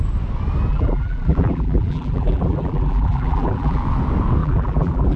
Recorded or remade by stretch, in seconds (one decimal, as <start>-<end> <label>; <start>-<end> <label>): 0.0-0.7 recorded; 0.7-3.8 remade; 3.8-4.4 recorded; 4.4-5.2 remade